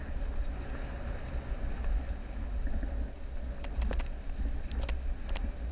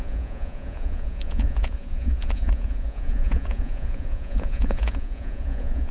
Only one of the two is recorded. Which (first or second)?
first